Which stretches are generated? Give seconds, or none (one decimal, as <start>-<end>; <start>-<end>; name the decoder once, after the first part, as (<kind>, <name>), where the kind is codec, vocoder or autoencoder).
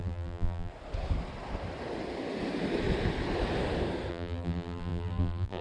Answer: 0.0-0.7 (vocoder, BigVGAN v2); 4.1-5.6